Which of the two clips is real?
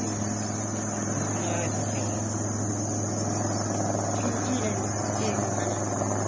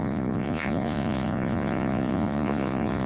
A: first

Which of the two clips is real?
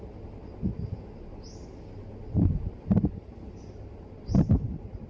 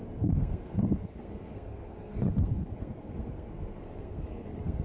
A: first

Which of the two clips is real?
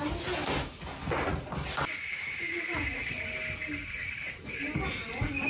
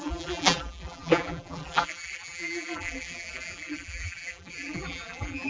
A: first